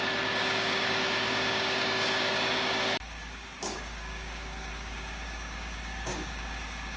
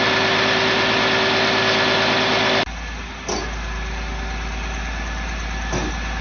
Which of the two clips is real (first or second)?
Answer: second